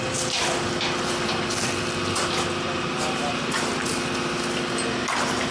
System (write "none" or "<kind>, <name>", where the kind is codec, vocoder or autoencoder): none